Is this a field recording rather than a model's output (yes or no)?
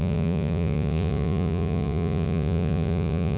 no